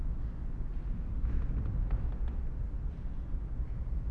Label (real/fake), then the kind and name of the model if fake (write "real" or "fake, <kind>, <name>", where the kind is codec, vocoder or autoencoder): real